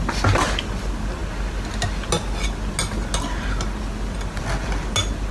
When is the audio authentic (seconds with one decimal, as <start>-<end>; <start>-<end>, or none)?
0.0-5.3